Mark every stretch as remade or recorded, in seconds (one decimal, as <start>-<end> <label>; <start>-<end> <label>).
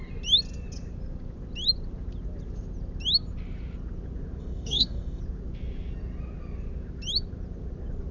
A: 0.0-4.4 recorded; 4.4-5.2 remade; 5.2-8.1 recorded